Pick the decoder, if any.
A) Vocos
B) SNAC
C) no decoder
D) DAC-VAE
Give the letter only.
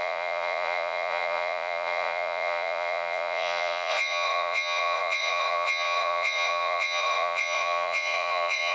A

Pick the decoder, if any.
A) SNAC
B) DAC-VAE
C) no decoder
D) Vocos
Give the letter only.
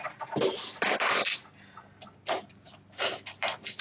C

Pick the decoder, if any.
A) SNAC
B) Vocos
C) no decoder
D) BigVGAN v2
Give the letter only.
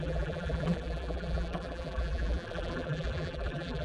D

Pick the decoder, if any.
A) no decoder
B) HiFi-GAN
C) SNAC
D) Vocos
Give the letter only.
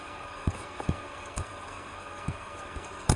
C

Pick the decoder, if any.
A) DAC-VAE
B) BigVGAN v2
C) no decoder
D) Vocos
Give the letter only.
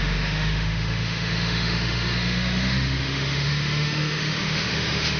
A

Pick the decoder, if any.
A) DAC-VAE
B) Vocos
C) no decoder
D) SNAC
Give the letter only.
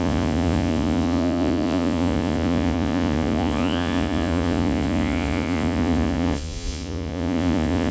B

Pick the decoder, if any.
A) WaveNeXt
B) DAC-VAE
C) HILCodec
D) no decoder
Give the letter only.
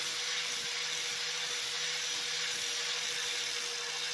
D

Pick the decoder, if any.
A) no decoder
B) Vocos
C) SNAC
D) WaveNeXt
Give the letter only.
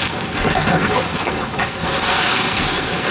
C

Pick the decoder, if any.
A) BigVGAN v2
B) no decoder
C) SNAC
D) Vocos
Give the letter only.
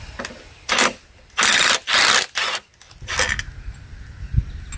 B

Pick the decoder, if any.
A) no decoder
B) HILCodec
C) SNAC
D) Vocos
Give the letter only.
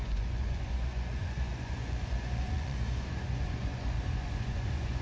D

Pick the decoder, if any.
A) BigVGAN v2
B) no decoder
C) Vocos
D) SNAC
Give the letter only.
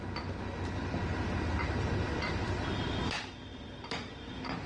B